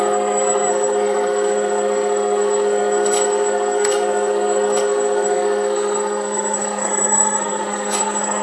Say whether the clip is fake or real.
fake